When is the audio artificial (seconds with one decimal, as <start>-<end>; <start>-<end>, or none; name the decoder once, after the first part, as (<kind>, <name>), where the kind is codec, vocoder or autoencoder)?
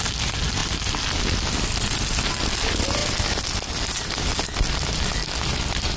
0.0-0.6 (vocoder, BigVGAN v2); 1.6-3.0